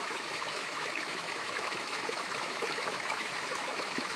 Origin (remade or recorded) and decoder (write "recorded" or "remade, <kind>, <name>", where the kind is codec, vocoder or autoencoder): remade, autoencoder, DAC-VAE